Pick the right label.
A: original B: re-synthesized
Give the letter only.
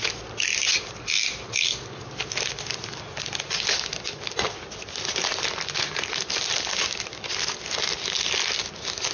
A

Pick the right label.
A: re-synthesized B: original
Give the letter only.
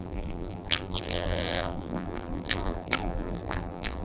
A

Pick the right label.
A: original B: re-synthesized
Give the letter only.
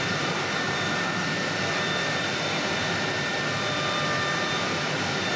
B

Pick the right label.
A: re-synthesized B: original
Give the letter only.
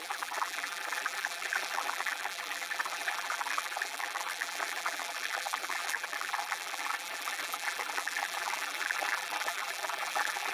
A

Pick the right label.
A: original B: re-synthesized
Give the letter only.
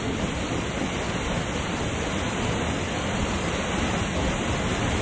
A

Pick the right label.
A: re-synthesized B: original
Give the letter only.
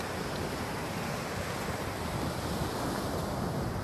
B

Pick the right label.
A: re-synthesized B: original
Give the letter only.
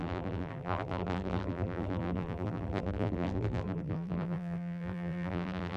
A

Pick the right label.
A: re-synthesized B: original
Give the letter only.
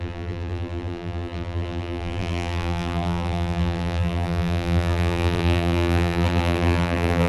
A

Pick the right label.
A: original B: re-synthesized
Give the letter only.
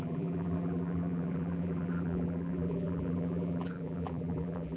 B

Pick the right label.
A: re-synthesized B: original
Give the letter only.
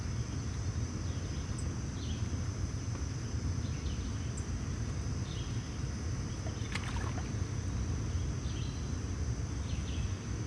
B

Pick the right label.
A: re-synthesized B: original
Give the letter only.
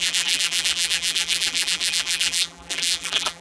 A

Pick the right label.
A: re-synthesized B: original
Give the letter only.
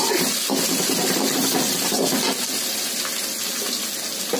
B